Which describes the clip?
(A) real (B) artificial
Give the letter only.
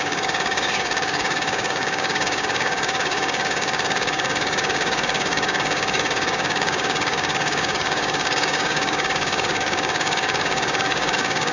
B